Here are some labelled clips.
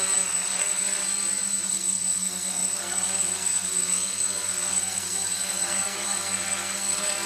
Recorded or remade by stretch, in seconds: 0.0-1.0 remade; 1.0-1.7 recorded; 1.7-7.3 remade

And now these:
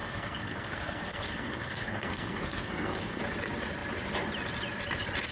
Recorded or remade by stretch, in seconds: 0.0-3.2 remade; 3.2-5.3 recorded

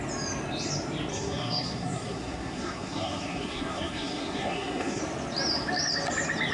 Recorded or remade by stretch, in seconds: 0.0-1.1 recorded; 1.1-5.0 remade; 5.0-6.5 recorded

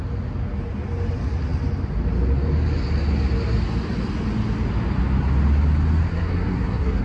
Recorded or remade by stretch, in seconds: 0.0-6.1 recorded; 6.1-7.0 remade